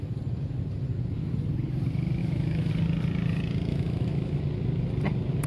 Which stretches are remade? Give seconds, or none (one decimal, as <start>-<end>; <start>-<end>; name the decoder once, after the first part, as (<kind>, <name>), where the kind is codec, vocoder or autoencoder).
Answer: 2.2-2.7 (autoencoder, DAC-VAE); 3.7-4.4